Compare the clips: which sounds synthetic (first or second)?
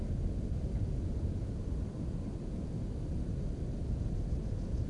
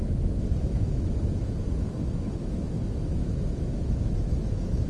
second